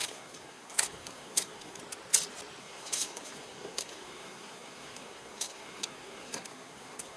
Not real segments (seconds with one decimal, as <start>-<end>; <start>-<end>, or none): 0.0-1.8; 2.6-7.2